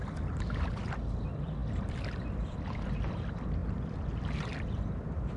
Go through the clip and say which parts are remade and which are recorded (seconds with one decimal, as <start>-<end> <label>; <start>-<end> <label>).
0.0-5.4 recorded